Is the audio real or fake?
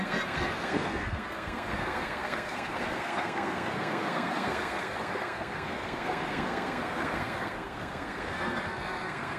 fake